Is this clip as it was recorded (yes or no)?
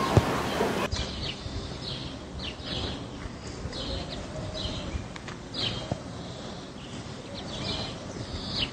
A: yes